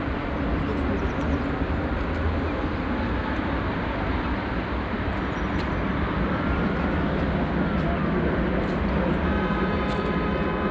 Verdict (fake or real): real